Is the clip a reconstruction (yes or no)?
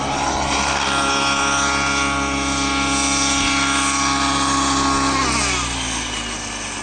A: no